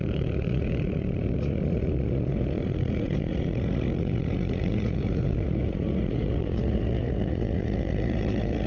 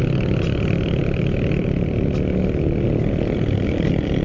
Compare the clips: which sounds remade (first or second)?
first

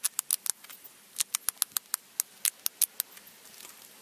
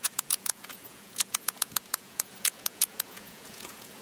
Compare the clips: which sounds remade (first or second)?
second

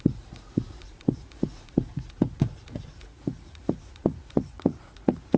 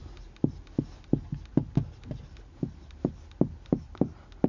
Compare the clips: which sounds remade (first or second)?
first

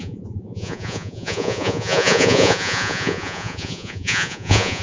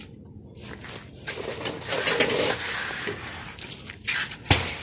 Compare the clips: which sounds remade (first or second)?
first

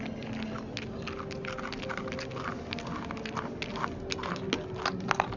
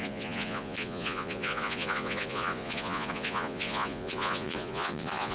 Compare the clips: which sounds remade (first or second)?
second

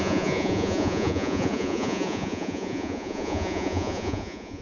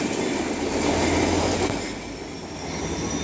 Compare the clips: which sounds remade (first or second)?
first